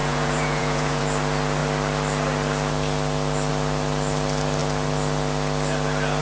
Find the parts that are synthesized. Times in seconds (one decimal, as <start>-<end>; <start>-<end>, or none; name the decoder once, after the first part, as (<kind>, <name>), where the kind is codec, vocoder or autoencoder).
0.0-1.0 (vocoder, Vocos)